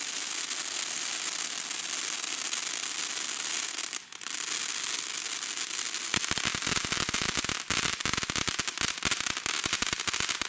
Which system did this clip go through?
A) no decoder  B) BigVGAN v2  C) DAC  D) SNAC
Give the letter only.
A